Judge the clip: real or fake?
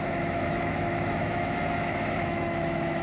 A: fake